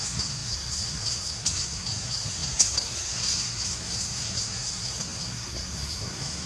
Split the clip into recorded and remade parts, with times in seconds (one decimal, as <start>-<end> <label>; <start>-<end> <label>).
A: 0.0-6.5 remade